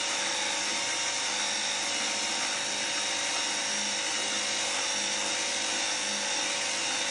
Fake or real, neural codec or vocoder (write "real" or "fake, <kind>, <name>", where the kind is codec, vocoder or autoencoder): real